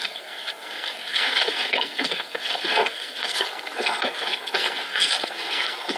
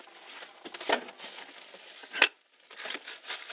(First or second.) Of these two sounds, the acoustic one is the second